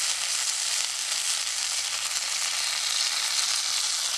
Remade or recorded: recorded